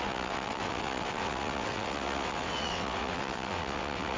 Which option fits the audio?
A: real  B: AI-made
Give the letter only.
B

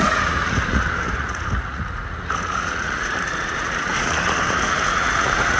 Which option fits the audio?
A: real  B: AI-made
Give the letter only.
B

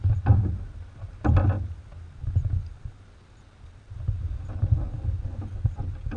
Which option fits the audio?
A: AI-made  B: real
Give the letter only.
B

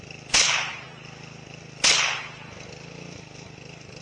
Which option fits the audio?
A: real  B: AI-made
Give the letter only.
A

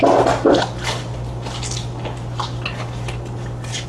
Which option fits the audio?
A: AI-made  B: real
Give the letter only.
B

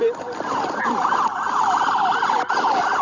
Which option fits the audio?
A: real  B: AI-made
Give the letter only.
A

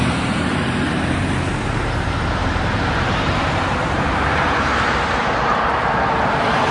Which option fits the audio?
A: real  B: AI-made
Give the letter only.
B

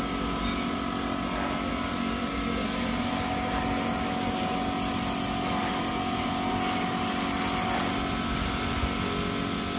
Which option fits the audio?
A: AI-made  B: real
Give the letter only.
B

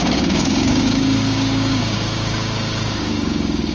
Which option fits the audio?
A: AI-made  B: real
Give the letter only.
A